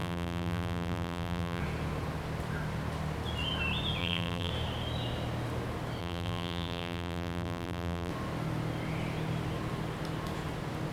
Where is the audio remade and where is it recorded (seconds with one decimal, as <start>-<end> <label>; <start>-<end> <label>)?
0.0-1.6 remade; 1.6-4.0 recorded; 4.0-4.5 remade; 4.5-6.0 recorded; 6.0-8.1 remade; 8.1-10.9 recorded